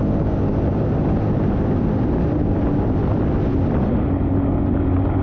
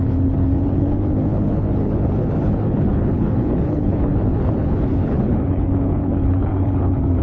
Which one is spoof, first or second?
second